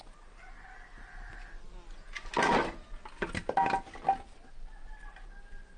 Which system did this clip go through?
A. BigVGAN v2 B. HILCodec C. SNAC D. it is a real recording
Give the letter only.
D